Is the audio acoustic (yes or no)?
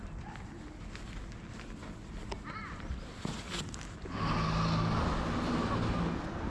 yes